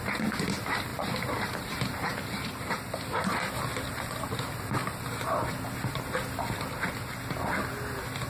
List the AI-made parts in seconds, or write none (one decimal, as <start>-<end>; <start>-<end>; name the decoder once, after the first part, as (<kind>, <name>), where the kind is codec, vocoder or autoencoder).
0.9-3.5 (vocoder, BigVGAN v2); 4.8-5.6